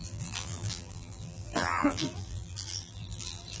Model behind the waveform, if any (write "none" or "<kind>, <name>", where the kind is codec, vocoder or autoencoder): vocoder, BigVGAN v2